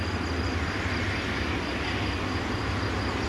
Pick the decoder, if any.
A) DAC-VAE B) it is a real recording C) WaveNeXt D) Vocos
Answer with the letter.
B